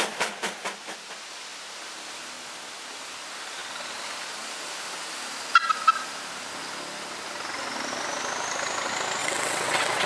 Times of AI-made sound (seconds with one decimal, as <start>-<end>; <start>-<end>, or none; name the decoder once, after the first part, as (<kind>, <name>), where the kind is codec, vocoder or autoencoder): 9.2-10.1 (vocoder, WaveNeXt)